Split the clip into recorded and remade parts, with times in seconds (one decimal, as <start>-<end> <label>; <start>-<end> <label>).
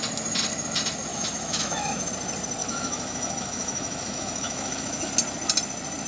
0.0-1.1 recorded; 1.1-2.1 remade; 2.1-2.6 recorded; 2.6-5.1 remade; 5.1-6.1 recorded